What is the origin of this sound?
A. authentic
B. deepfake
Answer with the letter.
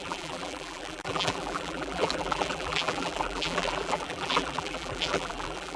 B